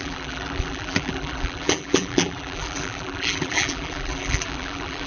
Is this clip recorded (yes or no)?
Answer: no